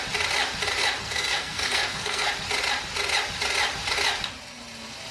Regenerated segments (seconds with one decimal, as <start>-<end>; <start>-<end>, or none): 1.0-2.3